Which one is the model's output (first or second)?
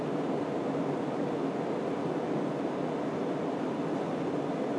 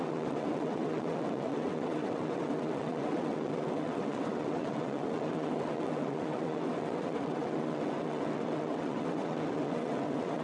second